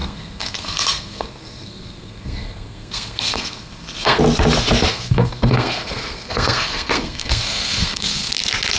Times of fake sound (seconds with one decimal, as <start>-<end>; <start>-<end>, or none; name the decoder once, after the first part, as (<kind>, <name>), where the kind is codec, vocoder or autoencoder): 0.0-4.2 (codec, SNAC); 4.9-8.3